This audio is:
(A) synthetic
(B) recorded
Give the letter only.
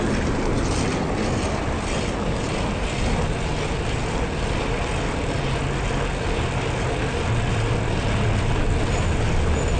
B